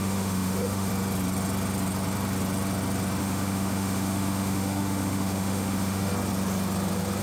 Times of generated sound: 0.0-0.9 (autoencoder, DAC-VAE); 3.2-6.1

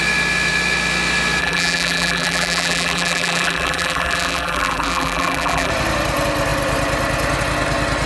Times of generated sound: 1.4-5.7 (vocoder, BigVGAN v2)

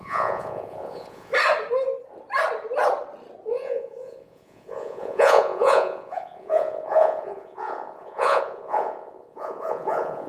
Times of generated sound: 0.0-1.3 (vocoder, Vocos); 3.5-10.3